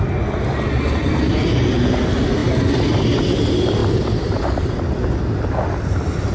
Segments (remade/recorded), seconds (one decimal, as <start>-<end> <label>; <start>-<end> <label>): 0.0-6.3 recorded